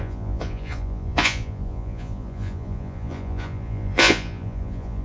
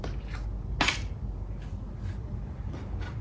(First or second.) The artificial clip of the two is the first